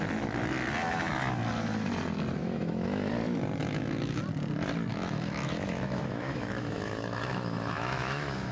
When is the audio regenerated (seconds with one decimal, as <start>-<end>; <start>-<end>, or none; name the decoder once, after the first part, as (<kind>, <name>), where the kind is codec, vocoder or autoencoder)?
2.4-3.1 (autoencoder, DAC-VAE); 3.6-4.2; 4.9-8.5